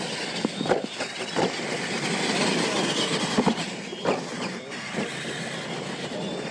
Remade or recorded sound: recorded